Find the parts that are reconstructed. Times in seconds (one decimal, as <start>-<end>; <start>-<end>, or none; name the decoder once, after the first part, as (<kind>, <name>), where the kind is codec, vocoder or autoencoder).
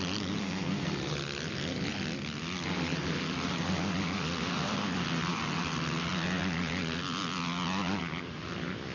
0.4-1.0 (codec, SNAC)